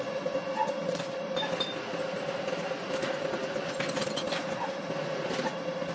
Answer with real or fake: real